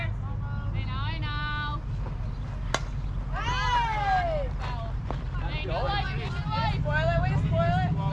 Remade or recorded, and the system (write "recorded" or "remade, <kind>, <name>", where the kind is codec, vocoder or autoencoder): recorded